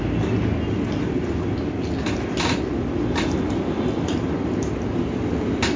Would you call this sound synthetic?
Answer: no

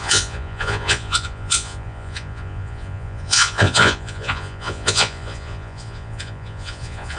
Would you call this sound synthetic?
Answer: yes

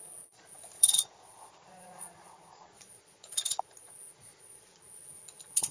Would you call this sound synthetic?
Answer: yes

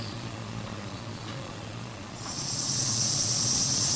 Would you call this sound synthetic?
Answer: yes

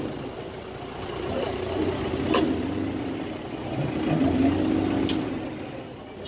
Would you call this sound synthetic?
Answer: no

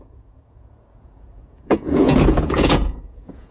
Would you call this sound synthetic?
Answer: yes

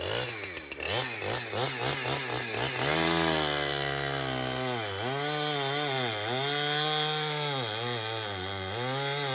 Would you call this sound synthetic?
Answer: no